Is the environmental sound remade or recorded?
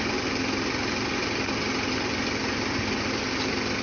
recorded